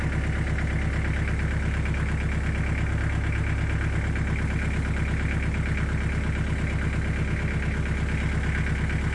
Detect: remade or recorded recorded